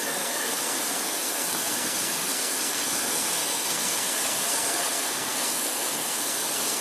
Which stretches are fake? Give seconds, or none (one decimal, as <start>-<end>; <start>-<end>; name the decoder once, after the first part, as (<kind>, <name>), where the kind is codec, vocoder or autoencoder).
0.0-6.8 (codec, SNAC)